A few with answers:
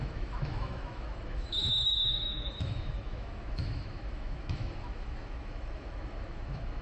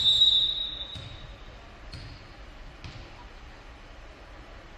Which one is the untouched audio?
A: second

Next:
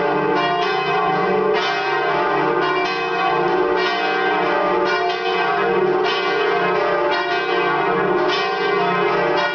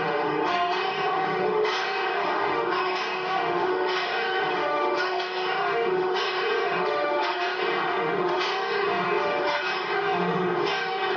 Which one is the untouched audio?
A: first